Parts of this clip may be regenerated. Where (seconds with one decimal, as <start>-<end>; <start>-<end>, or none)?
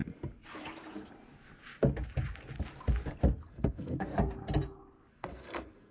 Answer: 3.5-4.1; 5.1-5.9